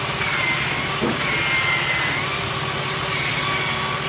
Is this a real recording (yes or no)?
yes